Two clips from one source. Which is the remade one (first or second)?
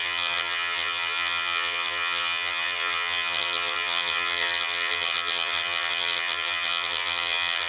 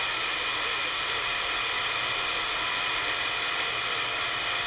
first